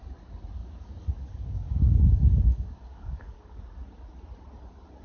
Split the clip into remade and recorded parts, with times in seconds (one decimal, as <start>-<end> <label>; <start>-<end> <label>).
0.0-0.6 recorded; 0.6-3.6 remade; 3.6-5.0 recorded